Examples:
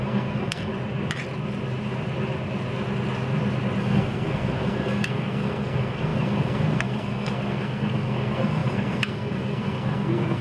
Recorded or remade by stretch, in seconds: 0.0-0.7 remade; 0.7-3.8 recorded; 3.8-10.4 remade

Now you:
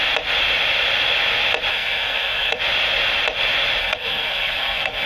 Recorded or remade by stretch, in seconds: 0.0-1.7 recorded; 1.7-2.6 remade; 2.6-3.8 recorded; 3.8-5.1 remade

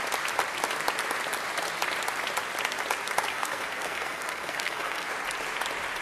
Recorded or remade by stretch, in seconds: 0.0-3.3 recorded; 3.3-5.1 remade; 5.1-6.0 recorded

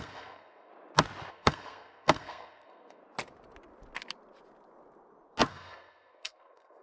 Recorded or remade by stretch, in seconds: 0.0-0.7 remade; 0.7-1.3 recorded; 1.3-3.0 remade; 3.0-5.5 recorded; 5.5-6.8 remade

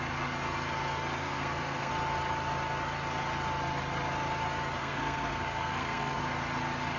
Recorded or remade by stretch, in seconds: 0.0-1.2 recorded; 1.2-1.9 remade; 1.9-4.8 recorded; 4.8-6.2 remade; 6.2-7.0 recorded

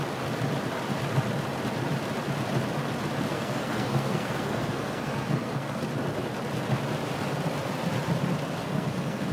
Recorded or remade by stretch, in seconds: 0.0-3.3 recorded; 3.3-5.8 remade; 5.8-8.6 recorded; 8.6-9.3 remade